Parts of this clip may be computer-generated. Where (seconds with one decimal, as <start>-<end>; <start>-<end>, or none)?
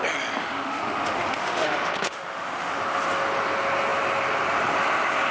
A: 0.4-2.8